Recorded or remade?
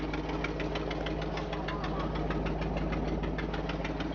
recorded